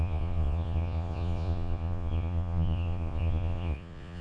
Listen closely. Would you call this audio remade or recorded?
remade